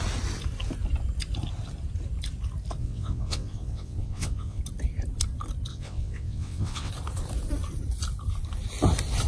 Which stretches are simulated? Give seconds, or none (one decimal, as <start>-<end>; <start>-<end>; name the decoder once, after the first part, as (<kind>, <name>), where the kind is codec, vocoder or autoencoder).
2.8-4.6 (vocoder, WaveNeXt); 5.7-6.9